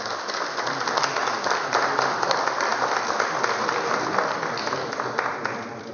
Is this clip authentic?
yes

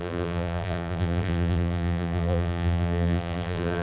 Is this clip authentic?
no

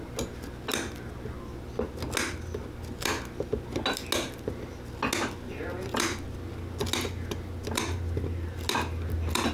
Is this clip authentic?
yes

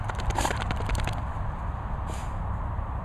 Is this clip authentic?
yes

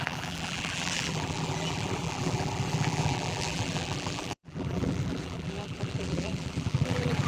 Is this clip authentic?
no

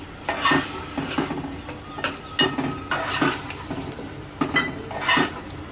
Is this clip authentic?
yes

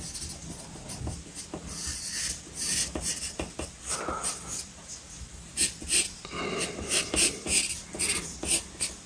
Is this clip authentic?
yes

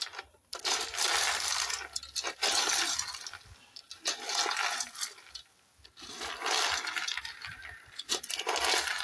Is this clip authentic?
yes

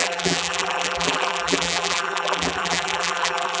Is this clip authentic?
no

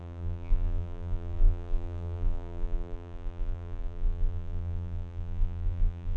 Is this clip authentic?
no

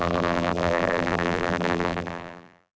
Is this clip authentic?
no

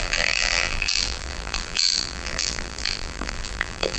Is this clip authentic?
no